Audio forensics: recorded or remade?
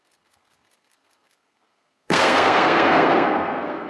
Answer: remade